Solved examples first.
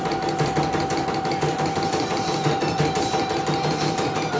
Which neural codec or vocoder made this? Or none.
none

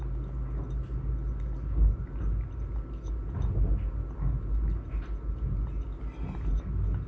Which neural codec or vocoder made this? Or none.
none